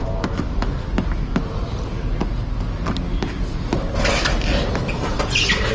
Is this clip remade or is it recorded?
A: recorded